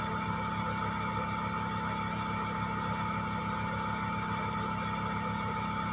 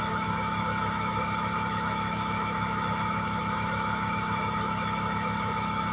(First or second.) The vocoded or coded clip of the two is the second